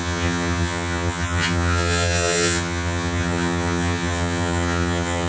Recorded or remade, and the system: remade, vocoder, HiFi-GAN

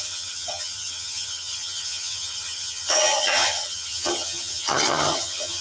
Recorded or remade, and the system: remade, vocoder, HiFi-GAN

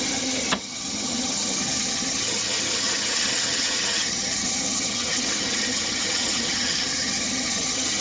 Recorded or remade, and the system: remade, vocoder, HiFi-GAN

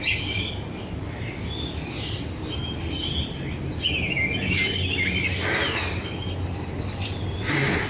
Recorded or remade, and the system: recorded